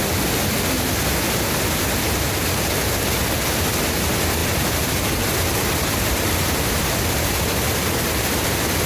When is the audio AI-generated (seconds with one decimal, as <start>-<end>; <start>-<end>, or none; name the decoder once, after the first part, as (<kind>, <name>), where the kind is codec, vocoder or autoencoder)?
none